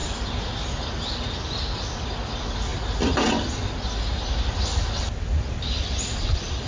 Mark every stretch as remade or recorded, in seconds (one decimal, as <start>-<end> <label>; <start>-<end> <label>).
0.0-6.7 recorded